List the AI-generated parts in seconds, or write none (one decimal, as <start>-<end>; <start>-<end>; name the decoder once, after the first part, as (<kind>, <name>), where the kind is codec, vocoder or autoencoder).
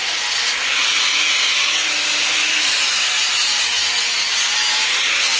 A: 1.8-3.6 (vocoder, BigVGAN v2)